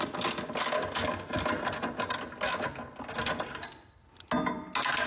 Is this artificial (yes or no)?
no